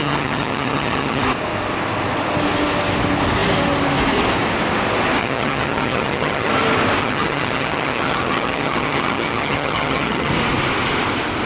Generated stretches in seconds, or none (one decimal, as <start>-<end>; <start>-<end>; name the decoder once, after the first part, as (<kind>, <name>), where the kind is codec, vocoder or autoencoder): 0.0-1.2 (vocoder, HiFi-GAN); 5.2-6.5; 7.0-10.3